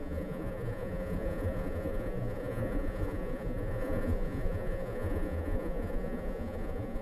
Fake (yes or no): yes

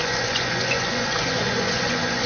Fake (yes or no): yes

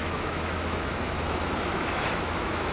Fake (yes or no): yes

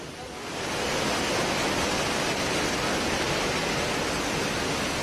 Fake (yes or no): no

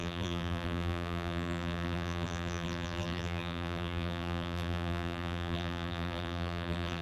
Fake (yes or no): yes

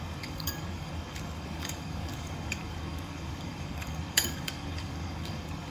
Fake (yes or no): yes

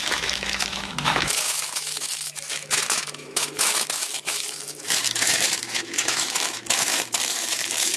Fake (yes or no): yes